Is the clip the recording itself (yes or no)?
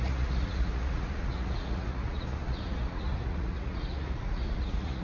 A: no